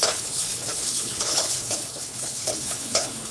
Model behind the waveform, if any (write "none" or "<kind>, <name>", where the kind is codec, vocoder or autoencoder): codec, HILCodec